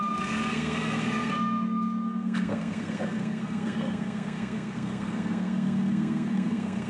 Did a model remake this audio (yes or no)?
yes